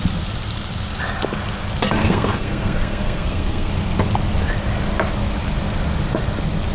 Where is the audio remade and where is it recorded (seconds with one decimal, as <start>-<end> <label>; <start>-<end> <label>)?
0.0-2.0 recorded; 2.0-3.7 remade; 3.7-6.7 recorded